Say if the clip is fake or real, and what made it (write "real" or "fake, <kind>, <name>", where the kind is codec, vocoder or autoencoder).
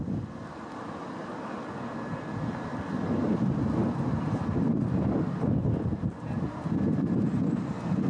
real